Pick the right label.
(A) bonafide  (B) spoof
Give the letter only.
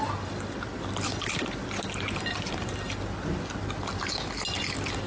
A